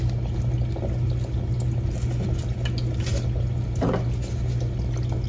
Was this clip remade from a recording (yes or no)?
no